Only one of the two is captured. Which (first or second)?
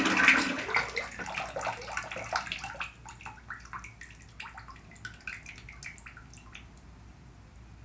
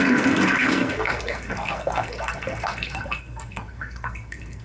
first